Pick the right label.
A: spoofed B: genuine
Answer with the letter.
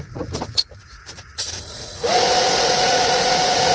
A